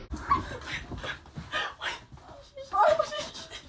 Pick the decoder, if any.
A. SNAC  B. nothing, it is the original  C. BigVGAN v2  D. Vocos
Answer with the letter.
B